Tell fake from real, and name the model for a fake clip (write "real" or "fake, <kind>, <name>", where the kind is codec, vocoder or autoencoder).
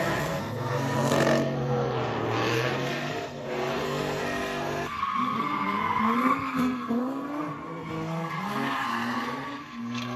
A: fake, codec, SNAC